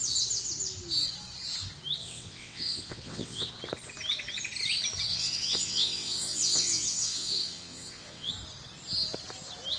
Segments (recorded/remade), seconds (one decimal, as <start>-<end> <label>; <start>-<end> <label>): 0.0-2.0 recorded; 2.0-3.5 remade; 3.5-5.1 recorded; 5.1-8.3 remade; 8.3-9.8 recorded